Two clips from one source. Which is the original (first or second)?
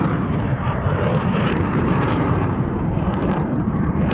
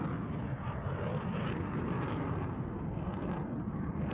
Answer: second